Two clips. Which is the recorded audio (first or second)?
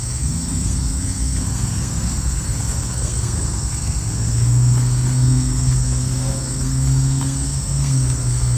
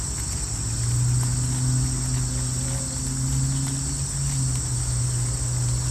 second